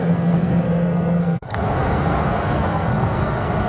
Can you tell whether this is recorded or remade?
remade